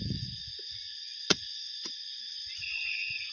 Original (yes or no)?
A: no